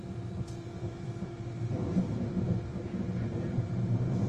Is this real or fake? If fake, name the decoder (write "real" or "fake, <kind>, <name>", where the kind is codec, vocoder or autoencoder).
fake, vocoder, BigVGAN v2